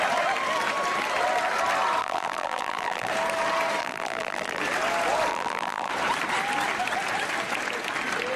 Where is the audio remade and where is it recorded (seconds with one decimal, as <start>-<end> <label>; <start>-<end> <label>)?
0.0-2.0 recorded; 2.0-3.1 remade; 3.1-3.8 recorded; 3.8-4.6 remade; 4.6-5.3 recorded; 5.3-5.9 remade; 5.9-8.4 recorded